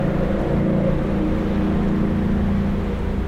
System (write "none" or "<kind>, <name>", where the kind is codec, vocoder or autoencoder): none